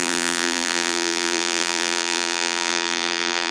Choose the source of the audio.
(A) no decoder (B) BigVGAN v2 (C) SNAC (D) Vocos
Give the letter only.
B